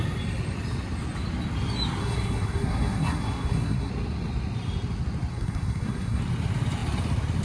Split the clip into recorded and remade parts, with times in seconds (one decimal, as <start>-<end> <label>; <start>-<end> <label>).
0.0-2.0 recorded; 2.0-3.9 remade; 3.9-5.3 recorded; 5.3-6.2 remade; 6.2-7.4 recorded